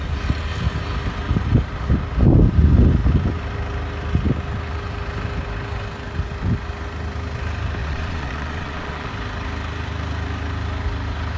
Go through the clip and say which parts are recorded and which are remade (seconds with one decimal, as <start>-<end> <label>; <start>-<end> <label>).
0.0-7.8 recorded; 7.8-9.1 remade; 9.1-11.4 recorded